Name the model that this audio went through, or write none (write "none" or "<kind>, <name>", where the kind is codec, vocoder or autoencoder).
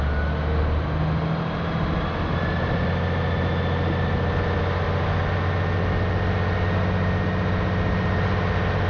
none